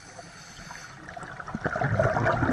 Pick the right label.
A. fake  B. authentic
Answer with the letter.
B